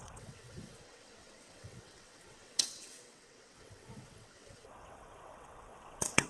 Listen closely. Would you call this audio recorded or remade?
remade